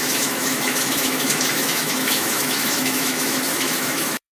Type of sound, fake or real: fake